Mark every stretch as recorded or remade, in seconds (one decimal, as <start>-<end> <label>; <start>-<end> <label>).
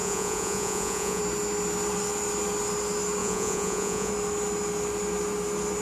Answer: 0.0-1.2 remade; 1.2-3.2 recorded; 3.2-4.1 remade; 4.1-5.8 recorded